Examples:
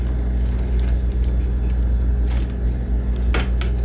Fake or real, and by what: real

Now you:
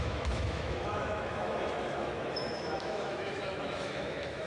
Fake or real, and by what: fake, autoencoder, DAC-VAE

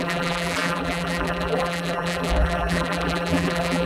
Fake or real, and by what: fake, vocoder, BigVGAN v2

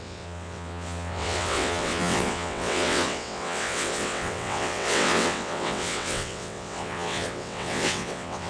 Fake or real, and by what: fake, vocoder, WaveNeXt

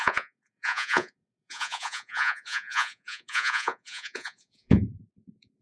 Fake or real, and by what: fake, vocoder, Vocos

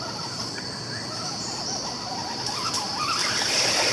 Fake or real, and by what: fake, vocoder, BigVGAN v2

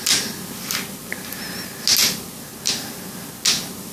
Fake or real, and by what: real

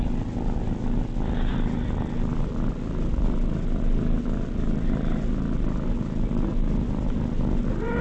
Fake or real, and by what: real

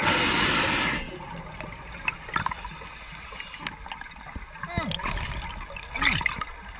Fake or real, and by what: real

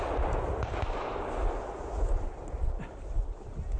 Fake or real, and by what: real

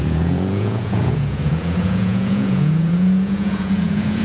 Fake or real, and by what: fake, vocoder, Vocos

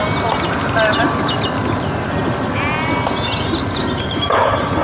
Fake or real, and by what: real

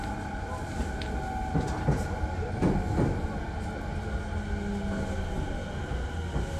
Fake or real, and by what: real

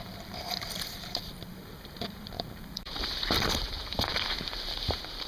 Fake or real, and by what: fake, vocoder, BigVGAN v2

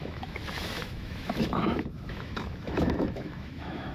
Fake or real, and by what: fake, autoencoder, DAC-VAE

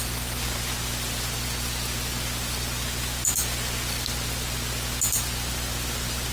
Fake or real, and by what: real